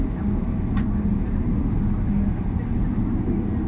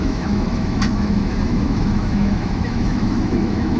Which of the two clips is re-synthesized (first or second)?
second